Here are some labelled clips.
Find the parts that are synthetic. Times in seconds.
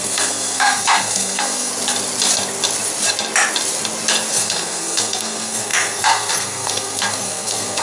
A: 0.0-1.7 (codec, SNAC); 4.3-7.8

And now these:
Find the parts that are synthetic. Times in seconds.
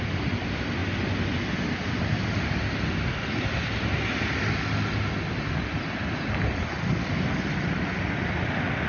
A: none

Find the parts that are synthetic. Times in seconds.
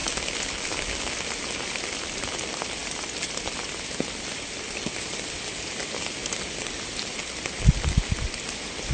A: none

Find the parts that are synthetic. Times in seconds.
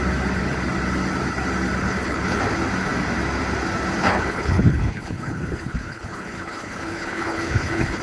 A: 1.8-2.4 (codec, HILCodec); 4.0-8.0